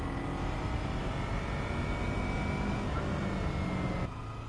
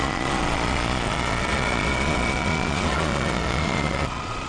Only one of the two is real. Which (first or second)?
first